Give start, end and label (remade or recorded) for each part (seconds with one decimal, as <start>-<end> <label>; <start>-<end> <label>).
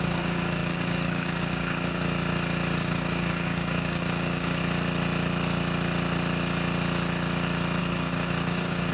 0.0-2.0 remade; 2.0-2.8 recorded; 2.8-4.6 remade; 4.6-7.8 recorded; 7.8-8.9 remade